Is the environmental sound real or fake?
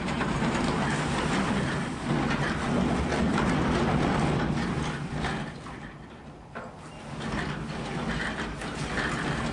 real